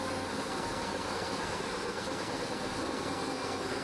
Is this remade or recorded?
remade